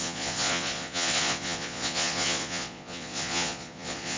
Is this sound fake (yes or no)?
yes